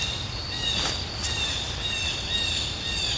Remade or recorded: recorded